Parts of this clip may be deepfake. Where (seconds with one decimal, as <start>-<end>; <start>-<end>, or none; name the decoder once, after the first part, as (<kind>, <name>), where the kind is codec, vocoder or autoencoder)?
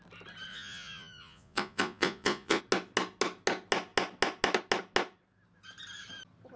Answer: 0.5-2.6 (vocoder, Vocos)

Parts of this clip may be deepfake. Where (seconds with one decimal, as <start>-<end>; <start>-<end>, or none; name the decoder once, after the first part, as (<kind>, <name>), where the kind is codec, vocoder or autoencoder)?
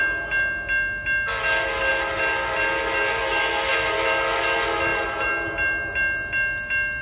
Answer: none